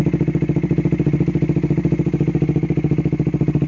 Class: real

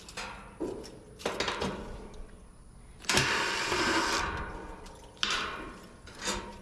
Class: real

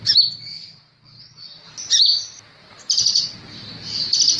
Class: real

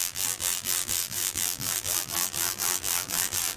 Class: fake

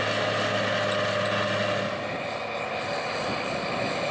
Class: real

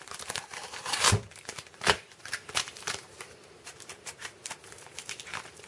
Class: fake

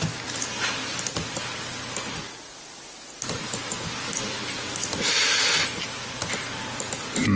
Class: real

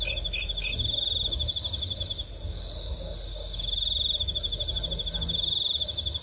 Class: real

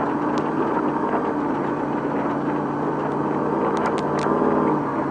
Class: real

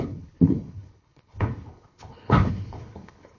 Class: fake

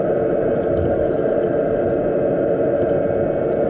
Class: real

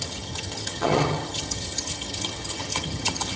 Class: fake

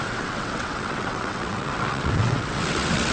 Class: fake